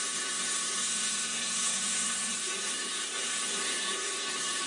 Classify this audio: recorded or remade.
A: remade